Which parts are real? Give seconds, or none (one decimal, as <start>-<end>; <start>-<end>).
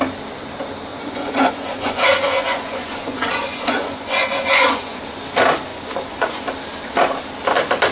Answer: 0.0-0.9; 5.0-5.7; 6.4-7.9